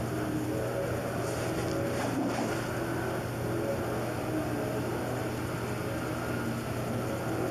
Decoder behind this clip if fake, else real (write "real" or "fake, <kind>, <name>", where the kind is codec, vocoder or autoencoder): real